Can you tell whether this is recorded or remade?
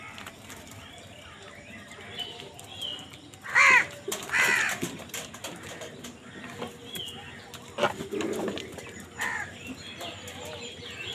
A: recorded